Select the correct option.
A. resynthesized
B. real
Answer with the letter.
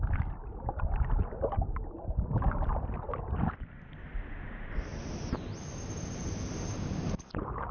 B